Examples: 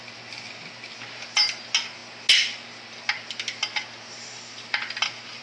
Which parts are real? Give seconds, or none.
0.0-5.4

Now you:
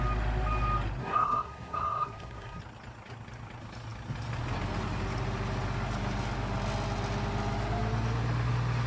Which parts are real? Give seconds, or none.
0.0-1.0; 2.6-8.9

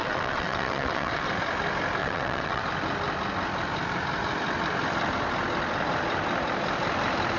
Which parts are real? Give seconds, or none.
1.3-2.0; 2.6-7.4

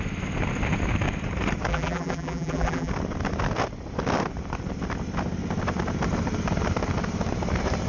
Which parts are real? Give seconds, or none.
0.0-1.7; 2.9-7.9

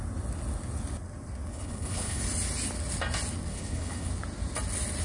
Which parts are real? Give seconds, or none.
0.0-1.5; 2.2-3.5; 4.1-5.0

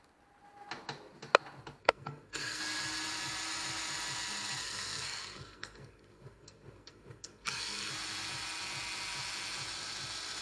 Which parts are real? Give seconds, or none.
0.0-1.8; 2.6-4.6; 7.9-10.4